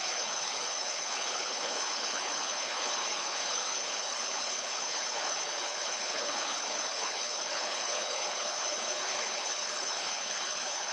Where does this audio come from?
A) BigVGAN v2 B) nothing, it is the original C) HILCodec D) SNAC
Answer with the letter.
C